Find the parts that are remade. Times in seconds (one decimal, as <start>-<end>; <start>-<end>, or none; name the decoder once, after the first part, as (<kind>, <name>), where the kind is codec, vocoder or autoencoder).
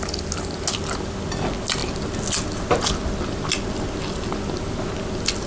none